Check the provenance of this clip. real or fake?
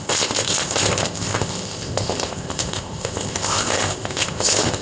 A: fake